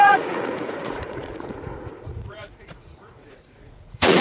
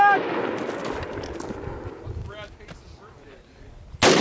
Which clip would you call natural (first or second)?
second